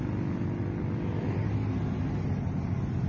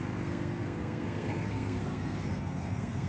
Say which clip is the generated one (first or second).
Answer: second